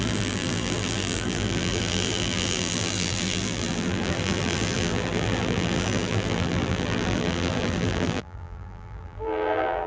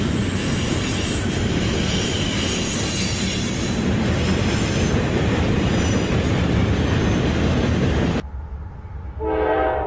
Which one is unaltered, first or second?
second